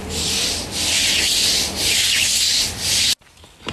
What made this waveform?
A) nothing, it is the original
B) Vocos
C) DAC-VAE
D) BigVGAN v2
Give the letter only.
A